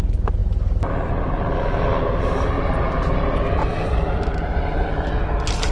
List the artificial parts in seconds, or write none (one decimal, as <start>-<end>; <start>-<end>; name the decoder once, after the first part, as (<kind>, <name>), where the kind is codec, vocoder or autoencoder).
none